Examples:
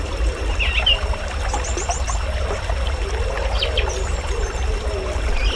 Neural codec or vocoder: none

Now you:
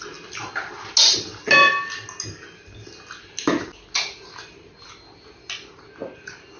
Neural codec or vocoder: none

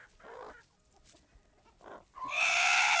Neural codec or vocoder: none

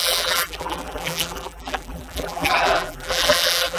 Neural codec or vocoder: vocoder, BigVGAN v2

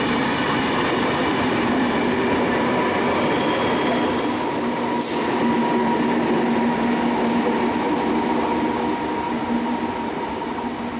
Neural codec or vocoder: none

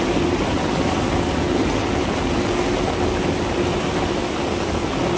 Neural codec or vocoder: none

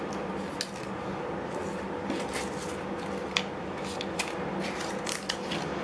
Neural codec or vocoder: none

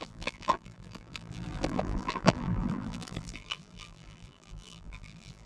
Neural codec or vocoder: vocoder, BigVGAN v2